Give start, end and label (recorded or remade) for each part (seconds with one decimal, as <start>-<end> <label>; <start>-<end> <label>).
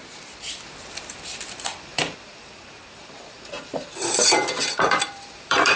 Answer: 0.0-1.9 recorded; 1.9-5.8 remade